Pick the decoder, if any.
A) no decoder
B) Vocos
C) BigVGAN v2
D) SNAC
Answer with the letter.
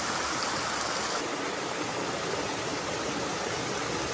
A